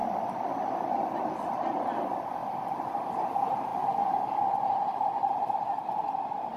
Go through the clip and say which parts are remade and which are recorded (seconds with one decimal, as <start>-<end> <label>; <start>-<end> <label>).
0.0-6.6 recorded